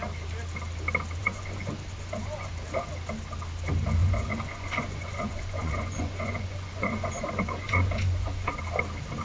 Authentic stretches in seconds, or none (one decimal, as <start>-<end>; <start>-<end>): 0.0-1.2; 2.5-4.0; 8.6-9.2